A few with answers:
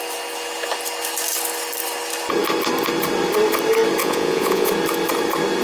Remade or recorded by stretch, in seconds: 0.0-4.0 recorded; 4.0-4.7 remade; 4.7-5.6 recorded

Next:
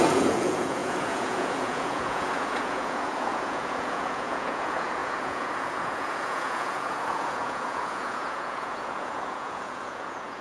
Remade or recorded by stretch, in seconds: 0.0-10.4 remade

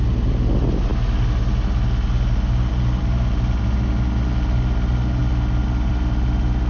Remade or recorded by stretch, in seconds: 0.0-6.7 recorded

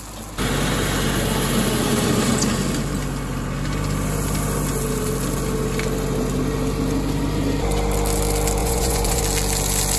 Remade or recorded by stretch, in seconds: 0.0-8.6 recorded; 8.6-9.2 remade; 9.2-10.0 recorded

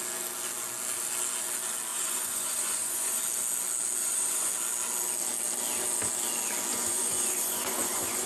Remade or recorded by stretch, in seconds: 0.0-1.9 recorded; 1.9-3.2 remade; 3.2-4.0 recorded; 4.0-4.5 remade; 4.5-6.7 recorded; 6.7-8.3 remade

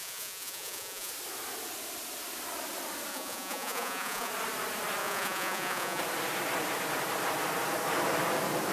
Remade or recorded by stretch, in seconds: 0.0-1.1 remade; 1.1-3.1 recorded; 3.1-4.3 remade; 4.3-5.0 recorded; 5.0-6.0 remade; 6.0-8.7 recorded